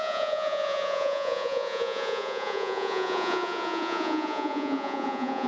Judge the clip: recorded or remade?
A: remade